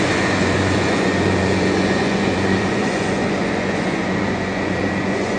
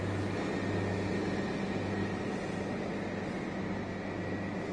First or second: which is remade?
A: first